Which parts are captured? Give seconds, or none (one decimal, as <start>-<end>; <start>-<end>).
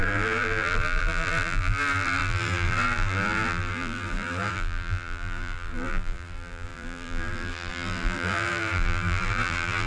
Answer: none